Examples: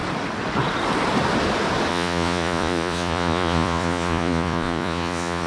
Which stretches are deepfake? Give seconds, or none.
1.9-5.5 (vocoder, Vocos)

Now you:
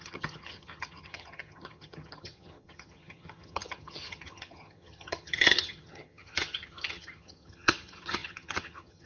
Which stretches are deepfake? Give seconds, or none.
0.0-9.1 (vocoder, HiFi-GAN)

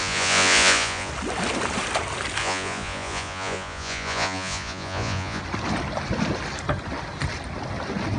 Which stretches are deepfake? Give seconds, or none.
0.0-1.1 (vocoder, Vocos); 2.4-5.4

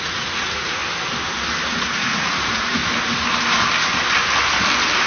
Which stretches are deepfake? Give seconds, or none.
0.0-0.8 (vocoder, Vocos); 1.8-2.8

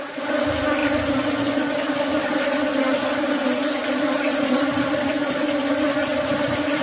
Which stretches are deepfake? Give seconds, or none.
2.1-2.8 (vocoder, BigVGAN v2); 3.8-5.1; 6.1-6.8